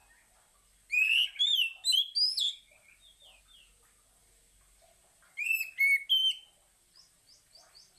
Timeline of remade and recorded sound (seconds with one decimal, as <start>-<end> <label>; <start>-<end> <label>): 0.0-8.0 recorded